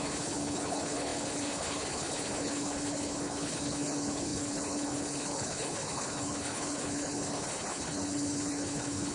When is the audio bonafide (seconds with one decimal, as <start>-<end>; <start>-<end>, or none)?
none